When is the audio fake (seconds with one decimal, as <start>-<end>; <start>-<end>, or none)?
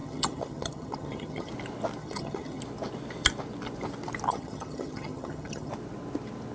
0.0-1.5; 2.0-2.6; 4.3-5.7